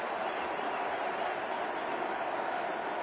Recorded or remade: recorded